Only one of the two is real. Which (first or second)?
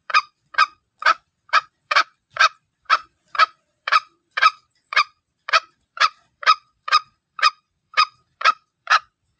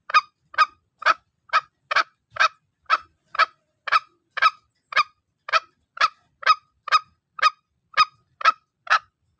second